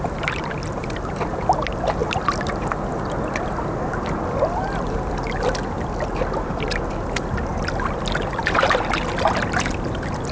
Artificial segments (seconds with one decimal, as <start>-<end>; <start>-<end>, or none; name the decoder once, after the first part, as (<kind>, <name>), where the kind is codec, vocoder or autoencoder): none